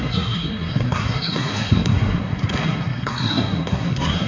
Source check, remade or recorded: remade